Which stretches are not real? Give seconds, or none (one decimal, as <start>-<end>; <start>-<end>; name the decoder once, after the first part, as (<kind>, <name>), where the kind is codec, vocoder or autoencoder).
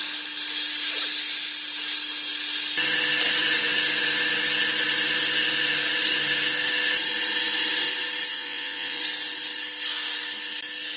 8.3-9.0 (vocoder, Vocos)